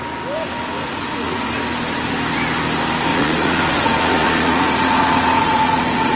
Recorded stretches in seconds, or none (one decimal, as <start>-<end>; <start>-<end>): 0.0-0.8; 1.5-3.1